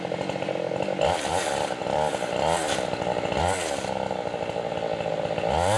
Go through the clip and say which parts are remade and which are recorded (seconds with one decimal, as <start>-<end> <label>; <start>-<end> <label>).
0.0-5.8 recorded